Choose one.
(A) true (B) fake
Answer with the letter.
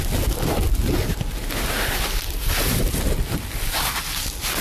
A